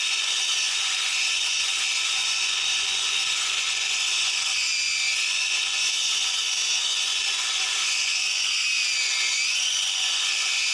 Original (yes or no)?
no